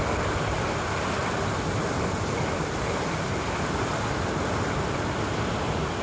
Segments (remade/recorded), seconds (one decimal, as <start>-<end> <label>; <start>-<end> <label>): 0.0-1.2 recorded; 1.2-4.4 remade; 4.4-6.0 recorded